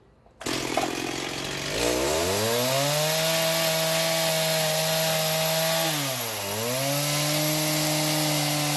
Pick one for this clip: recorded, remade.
recorded